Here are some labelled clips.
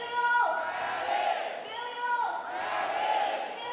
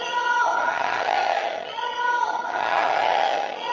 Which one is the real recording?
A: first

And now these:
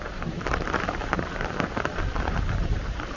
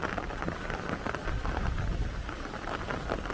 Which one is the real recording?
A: second